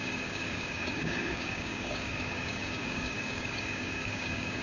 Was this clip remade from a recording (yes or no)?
yes